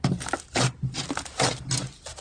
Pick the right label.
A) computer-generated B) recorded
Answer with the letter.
B